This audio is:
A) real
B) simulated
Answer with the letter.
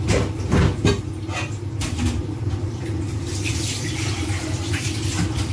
B